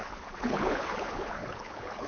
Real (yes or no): no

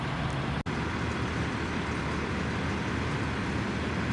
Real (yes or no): yes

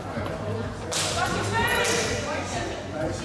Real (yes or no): yes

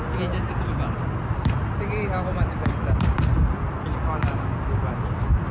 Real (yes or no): yes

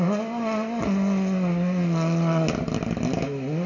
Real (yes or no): yes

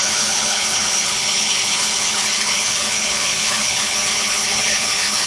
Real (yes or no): no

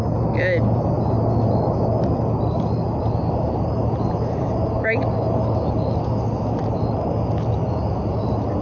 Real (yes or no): yes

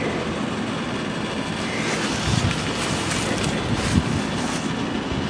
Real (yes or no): yes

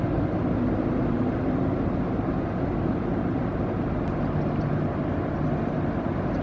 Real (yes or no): yes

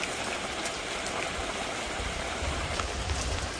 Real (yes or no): yes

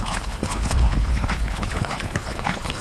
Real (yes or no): no